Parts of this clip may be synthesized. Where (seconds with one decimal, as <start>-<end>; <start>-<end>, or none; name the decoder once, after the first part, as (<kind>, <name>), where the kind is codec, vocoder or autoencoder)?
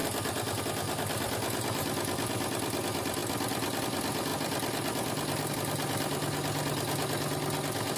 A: none